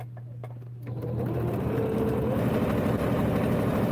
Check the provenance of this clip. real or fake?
real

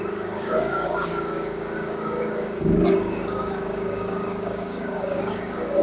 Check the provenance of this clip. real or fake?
fake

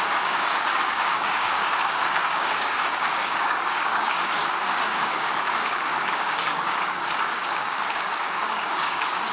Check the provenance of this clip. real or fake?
fake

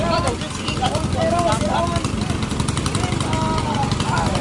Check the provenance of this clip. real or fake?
real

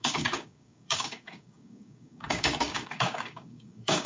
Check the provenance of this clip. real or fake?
fake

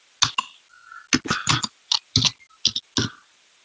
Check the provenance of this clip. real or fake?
real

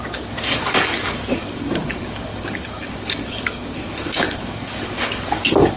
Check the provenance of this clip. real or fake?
fake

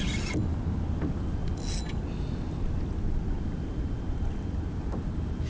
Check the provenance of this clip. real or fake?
real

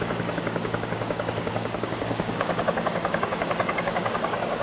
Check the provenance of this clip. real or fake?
fake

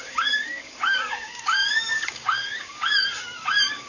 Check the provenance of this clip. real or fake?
fake